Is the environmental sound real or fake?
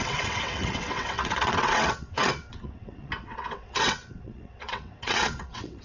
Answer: fake